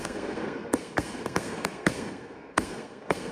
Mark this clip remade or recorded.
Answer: remade